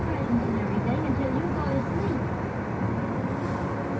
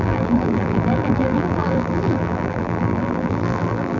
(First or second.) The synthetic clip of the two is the second